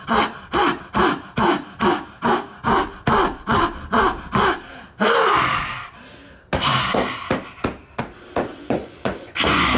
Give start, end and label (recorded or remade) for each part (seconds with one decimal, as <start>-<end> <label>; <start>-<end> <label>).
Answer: 0.0-8.5 recorded; 8.5-9.8 remade